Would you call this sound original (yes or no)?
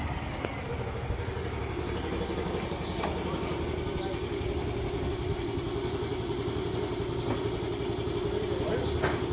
yes